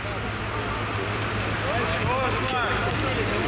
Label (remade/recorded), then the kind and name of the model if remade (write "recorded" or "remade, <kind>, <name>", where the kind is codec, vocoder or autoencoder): recorded